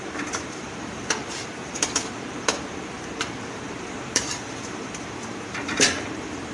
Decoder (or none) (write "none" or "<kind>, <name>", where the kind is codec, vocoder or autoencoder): vocoder, BigVGAN v2